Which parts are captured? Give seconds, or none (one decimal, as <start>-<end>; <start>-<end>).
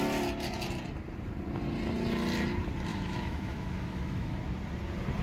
0.0-2.9; 4.4-5.2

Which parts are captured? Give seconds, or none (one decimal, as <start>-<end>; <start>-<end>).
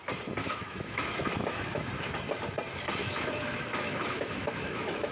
0.0-0.4; 1.9-3.0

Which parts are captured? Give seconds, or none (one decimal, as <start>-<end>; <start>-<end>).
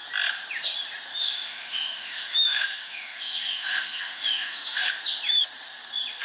0.0-1.2; 4.9-6.2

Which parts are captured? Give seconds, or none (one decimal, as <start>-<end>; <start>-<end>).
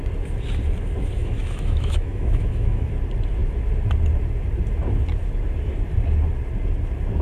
0.0-1.2; 2.9-7.2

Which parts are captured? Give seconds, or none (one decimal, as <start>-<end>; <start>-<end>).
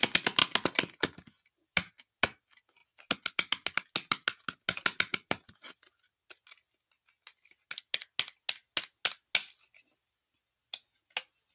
0.0-11.5